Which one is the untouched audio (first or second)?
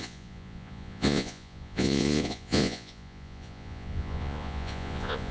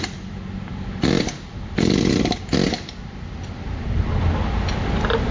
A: second